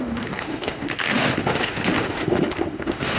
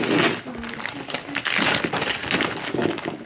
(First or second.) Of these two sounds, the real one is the second